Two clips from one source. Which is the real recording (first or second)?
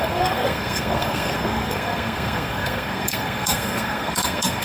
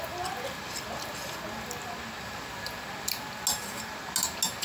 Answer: second